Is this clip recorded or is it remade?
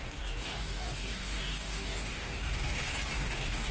remade